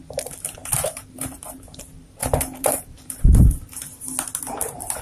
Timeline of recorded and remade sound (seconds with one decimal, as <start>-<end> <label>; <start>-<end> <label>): 0.0-0.6 recorded; 0.6-3.1 remade; 3.1-5.0 recorded